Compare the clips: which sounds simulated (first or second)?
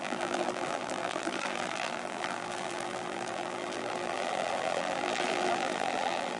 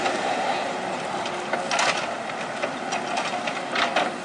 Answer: first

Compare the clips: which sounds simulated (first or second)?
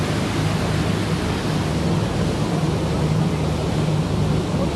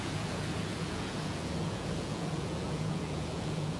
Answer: second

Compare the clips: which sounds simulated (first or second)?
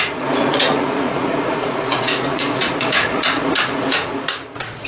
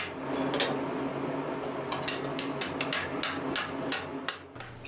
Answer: first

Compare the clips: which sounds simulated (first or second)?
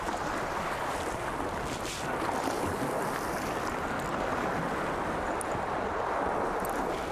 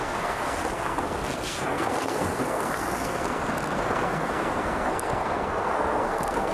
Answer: second